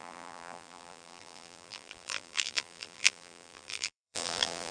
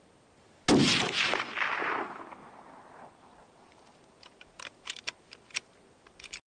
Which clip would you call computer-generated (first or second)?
first